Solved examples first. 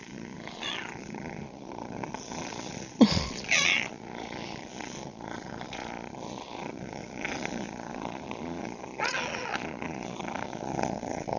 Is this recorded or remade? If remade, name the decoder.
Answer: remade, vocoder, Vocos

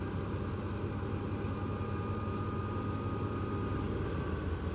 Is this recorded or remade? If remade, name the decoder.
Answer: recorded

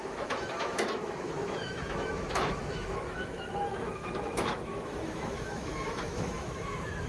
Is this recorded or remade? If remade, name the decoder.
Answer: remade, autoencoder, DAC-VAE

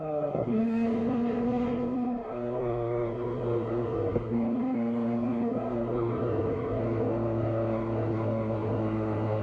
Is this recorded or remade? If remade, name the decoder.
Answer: remade, codec, SNAC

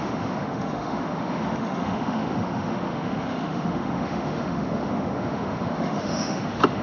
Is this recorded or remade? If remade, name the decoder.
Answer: remade, autoencoder, DAC-VAE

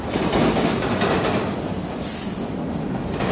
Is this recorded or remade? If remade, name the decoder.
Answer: recorded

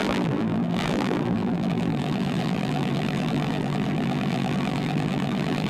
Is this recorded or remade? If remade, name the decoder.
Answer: remade, vocoder, BigVGAN v2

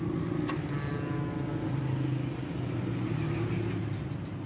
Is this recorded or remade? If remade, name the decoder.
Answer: recorded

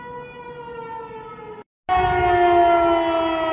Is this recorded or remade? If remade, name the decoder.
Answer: recorded